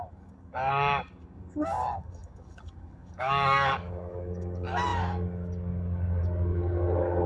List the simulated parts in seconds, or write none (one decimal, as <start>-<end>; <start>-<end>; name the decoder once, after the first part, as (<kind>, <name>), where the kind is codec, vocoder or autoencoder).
0.0-7.3 (codec, DAC)